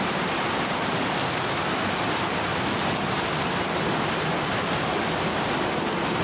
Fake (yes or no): no